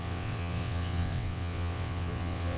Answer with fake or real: fake